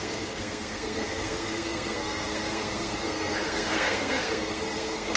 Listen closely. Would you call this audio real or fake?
fake